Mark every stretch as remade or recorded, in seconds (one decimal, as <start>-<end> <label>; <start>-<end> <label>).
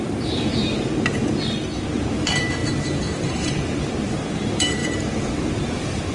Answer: 0.0-0.9 remade; 0.9-2.1 recorded; 2.1-6.1 remade